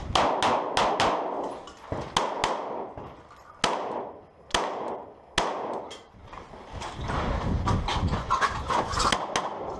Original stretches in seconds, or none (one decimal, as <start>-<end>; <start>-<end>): 0.0-7.9; 9.0-9.8